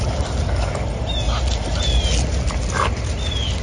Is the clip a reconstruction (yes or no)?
no